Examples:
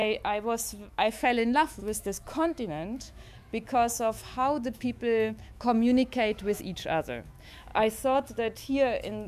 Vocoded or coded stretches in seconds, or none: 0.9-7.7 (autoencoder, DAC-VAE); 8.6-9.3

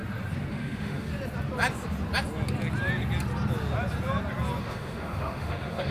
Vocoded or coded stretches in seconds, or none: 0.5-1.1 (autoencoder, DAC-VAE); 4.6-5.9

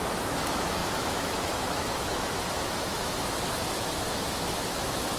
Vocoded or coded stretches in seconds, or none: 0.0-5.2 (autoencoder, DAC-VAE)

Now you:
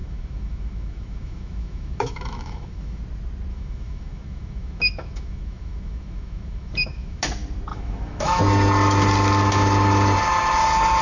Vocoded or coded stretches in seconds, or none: 0.0-3.0 (autoencoder, DAC-VAE); 3.5-7.2; 7.7-8.4

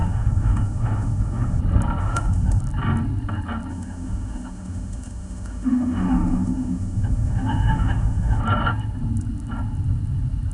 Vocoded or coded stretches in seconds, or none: 0.0-1.6 (autoencoder, DAC-VAE); 2.0-2.6; 3.7-8.4